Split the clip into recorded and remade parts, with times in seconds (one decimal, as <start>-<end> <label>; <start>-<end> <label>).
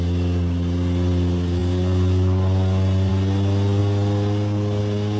0.0-5.2 recorded